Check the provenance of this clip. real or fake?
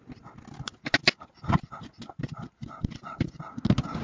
real